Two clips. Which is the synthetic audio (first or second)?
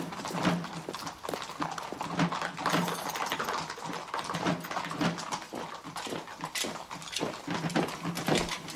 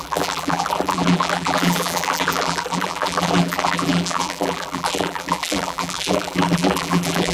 second